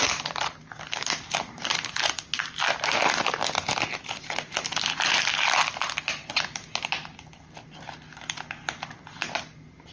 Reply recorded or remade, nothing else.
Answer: recorded